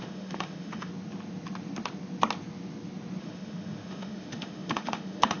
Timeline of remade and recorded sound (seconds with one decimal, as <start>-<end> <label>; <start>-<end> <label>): 0.0-0.9 remade; 0.9-3.2 recorded; 3.2-5.4 remade